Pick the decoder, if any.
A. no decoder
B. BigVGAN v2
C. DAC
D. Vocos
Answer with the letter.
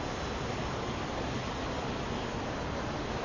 A